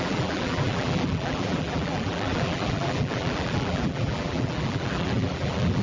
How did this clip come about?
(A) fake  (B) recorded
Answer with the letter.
A